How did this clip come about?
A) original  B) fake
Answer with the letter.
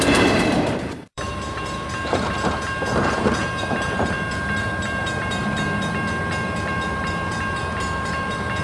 B